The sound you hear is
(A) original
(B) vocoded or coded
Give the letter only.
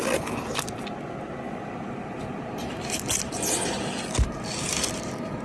A